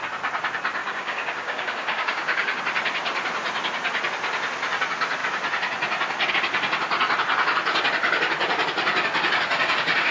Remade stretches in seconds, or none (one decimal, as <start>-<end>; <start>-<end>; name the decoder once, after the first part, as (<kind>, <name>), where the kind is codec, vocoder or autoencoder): 0.8-2.6 (codec, DAC)